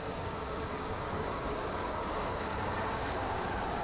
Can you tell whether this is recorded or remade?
remade